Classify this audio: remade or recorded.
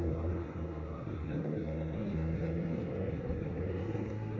remade